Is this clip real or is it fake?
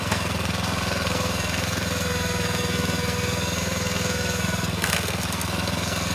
fake